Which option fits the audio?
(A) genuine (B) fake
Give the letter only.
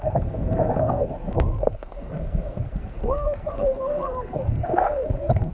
B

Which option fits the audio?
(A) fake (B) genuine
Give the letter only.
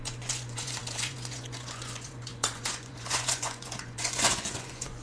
A